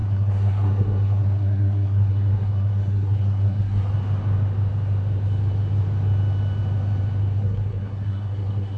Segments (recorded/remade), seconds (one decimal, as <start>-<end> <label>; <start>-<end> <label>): 0.0-3.9 remade; 3.9-7.4 recorded; 7.4-8.8 remade